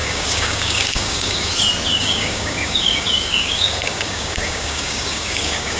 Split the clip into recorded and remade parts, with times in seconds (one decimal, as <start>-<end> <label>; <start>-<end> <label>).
0.0-1.5 remade; 1.5-1.9 recorded; 1.9-5.8 remade